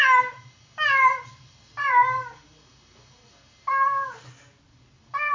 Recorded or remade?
recorded